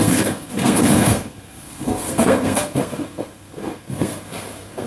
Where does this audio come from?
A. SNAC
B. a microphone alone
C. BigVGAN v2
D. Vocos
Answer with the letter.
A